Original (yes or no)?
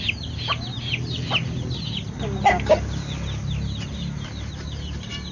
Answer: yes